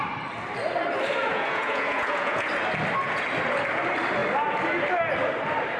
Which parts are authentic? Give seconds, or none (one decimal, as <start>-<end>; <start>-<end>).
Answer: 0.0-1.3; 2.5-5.8